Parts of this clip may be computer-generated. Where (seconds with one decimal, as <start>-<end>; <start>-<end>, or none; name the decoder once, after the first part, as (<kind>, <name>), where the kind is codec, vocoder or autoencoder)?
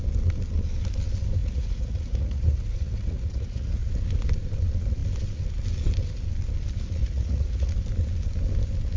1.4-3.9 (vocoder, Vocos); 7.0-7.7